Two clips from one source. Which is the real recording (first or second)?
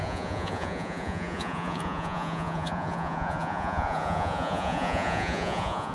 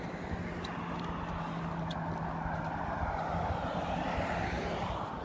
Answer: second